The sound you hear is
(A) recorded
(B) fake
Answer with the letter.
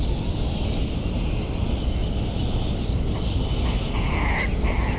A